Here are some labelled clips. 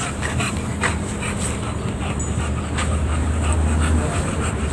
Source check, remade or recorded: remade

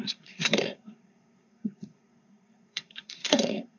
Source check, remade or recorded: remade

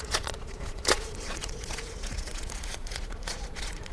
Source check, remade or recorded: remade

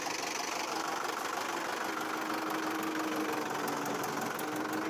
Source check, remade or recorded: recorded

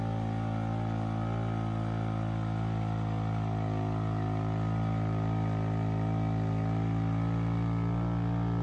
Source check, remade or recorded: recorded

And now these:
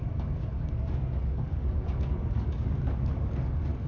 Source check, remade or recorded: remade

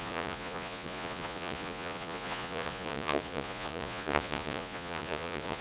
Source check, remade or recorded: remade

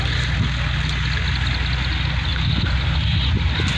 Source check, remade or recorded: recorded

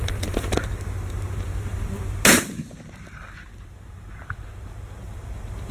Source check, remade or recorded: recorded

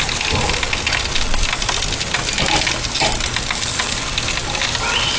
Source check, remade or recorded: recorded